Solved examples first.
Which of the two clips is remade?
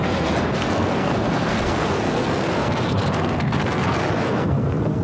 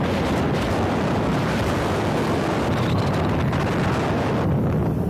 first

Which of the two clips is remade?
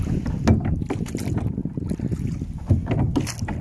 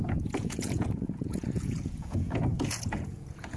second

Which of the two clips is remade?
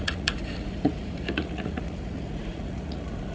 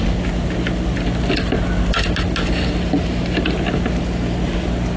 first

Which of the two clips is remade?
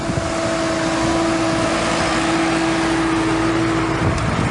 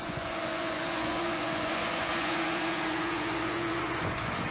second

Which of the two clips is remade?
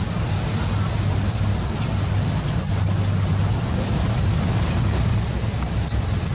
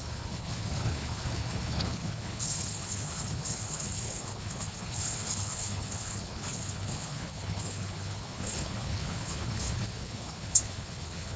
second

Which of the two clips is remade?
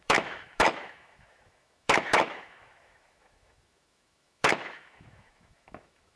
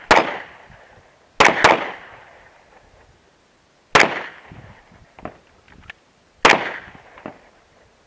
first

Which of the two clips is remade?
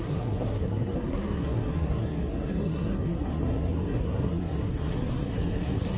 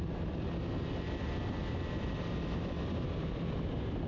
first